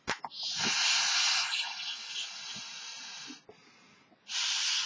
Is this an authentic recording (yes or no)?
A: yes